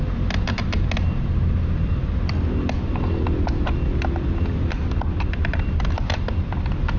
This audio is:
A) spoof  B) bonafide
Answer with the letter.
B